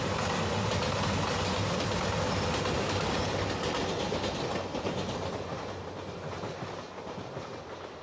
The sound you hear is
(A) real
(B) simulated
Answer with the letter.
A